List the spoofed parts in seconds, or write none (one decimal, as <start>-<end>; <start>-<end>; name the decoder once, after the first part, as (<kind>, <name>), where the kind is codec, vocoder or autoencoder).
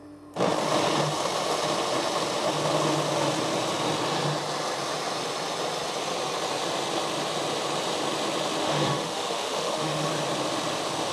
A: 8.6-10.1 (autoencoder, DAC-VAE)